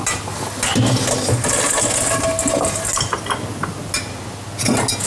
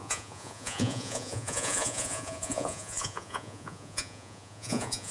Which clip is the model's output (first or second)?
second